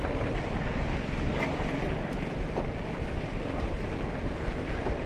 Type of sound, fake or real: real